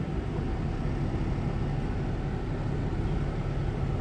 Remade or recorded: recorded